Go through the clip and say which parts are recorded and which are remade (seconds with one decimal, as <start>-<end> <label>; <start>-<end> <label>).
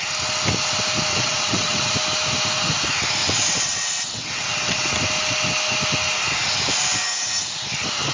0.0-1.1 recorded; 1.1-1.9 remade; 1.9-3.2 recorded; 3.2-4.9 remade; 4.9-8.1 recorded